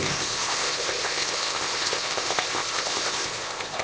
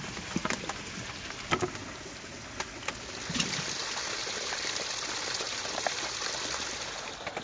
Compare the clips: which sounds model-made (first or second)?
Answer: first